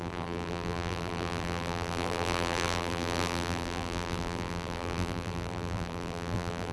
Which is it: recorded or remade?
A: remade